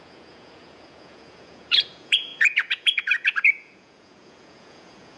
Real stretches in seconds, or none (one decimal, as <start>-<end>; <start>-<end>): none